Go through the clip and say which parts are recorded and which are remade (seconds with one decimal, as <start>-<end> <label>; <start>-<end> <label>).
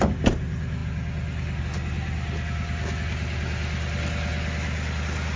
0.0-5.4 recorded